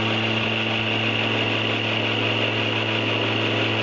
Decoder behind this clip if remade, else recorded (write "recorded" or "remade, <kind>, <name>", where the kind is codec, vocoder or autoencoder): recorded